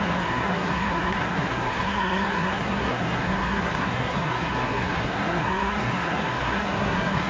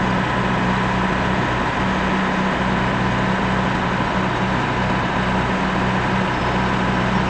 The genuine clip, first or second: second